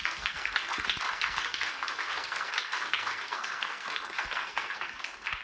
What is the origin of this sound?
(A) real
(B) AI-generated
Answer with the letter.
B